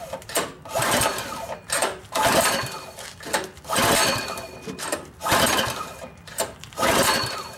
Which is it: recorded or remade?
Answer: remade